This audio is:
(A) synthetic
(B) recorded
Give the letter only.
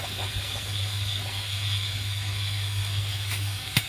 A